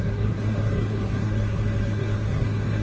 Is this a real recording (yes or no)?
no